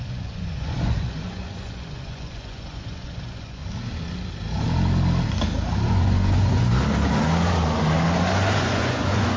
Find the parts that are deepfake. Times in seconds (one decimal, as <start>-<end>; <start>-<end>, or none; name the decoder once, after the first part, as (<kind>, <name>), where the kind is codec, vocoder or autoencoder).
0.0-3.6 (vocoder, Vocos); 5.9-6.7; 8.6-9.4